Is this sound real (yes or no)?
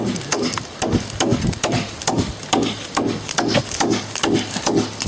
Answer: yes